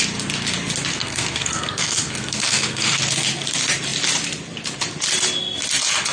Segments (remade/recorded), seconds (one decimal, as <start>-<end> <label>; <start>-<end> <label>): 0.0-0.9 recorded; 0.9-3.0 remade; 3.0-6.1 recorded

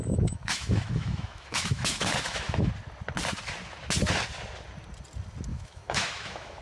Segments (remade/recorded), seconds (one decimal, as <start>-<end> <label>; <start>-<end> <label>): 0.0-2.7 remade; 2.7-5.5 recorded; 5.5-6.6 remade

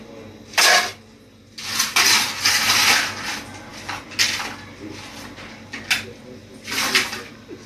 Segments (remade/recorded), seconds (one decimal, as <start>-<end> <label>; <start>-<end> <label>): 0.0-7.7 recorded

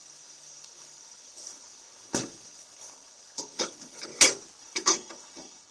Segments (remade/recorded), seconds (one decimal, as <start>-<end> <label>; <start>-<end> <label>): 0.0-4.1 remade; 4.1-4.6 recorded; 4.6-5.7 remade

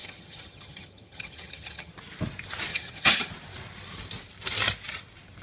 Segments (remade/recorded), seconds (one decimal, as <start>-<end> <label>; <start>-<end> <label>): 0.0-1.9 remade; 1.9-2.7 recorded; 2.7-3.3 remade; 3.3-5.4 recorded

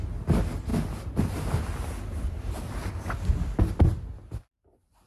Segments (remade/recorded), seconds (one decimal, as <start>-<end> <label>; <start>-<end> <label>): 0.0-5.1 recorded

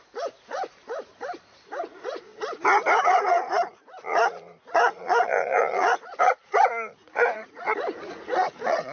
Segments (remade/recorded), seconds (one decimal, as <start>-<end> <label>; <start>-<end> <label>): 0.0-2.3 remade; 2.3-3.0 recorded; 3.0-8.9 remade

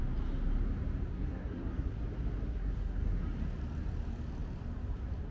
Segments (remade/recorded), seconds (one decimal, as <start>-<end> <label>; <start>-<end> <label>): 0.0-1.1 recorded; 1.1-2.0 remade; 2.0-2.5 recorded; 2.5-3.2 remade; 3.2-5.3 recorded